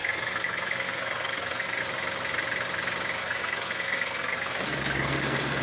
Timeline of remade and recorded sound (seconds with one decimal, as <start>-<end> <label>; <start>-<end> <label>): 0.0-1.8 remade; 1.8-3.2 recorded; 3.2-5.6 remade